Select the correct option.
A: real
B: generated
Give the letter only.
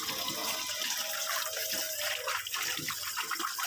A